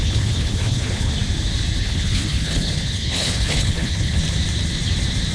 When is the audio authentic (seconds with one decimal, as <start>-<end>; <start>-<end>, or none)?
1.1-1.8; 4.2-5.3